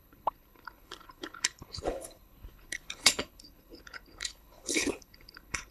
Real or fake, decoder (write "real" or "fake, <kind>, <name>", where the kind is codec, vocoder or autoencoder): fake, codec, HILCodec